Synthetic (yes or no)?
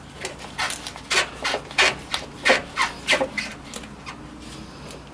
no